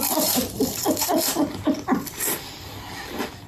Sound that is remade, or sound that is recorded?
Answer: remade